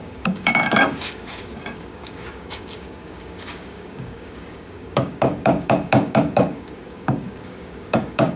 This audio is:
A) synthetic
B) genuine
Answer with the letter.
A